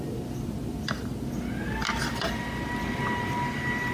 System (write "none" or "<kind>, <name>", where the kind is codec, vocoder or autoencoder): none